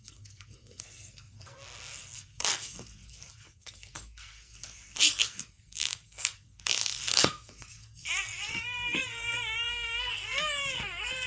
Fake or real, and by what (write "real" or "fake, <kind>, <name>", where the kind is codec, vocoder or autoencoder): fake, codec, SNAC